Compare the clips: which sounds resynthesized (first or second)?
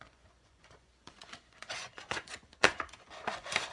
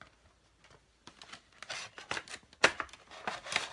first